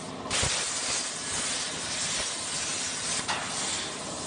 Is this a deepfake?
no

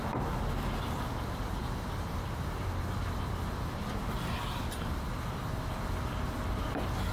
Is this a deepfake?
no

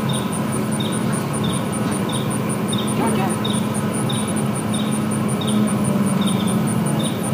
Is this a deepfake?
no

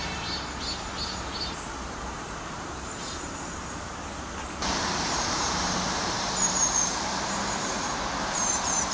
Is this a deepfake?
yes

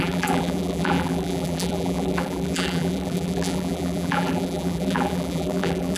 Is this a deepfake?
yes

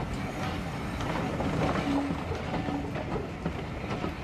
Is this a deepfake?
no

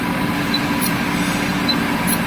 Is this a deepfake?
no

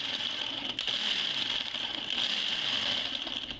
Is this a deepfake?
yes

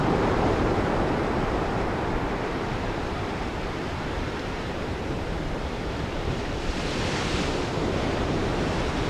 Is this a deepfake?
yes